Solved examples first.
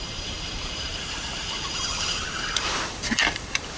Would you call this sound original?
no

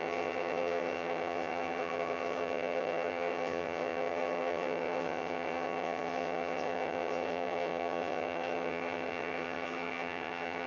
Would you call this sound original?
no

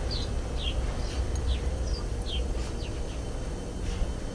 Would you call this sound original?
yes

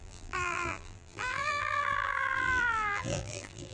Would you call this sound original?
no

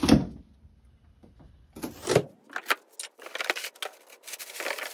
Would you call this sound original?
yes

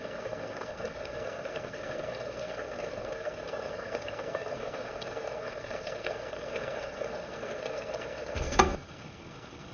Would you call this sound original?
no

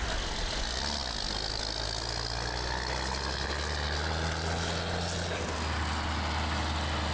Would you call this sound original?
yes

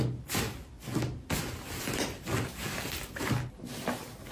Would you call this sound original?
yes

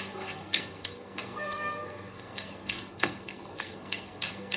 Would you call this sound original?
no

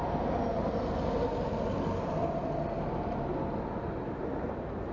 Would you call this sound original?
yes